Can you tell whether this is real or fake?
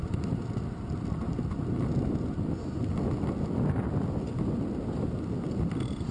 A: real